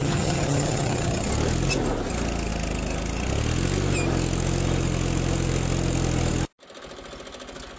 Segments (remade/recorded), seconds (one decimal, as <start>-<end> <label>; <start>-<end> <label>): 0.0-1.3 remade; 1.3-7.8 recorded